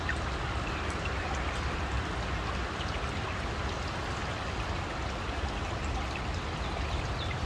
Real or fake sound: real